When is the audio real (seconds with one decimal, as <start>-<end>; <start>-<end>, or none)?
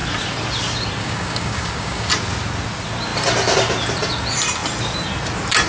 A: 0.0-1.0; 2.1-5.7